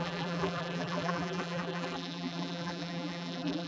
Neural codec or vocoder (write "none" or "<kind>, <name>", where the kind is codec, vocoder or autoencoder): vocoder, BigVGAN v2